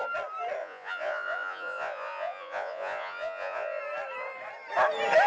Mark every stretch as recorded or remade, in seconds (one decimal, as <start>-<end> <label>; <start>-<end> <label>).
0.0-0.6 recorded; 0.6-3.8 remade; 3.8-5.3 recorded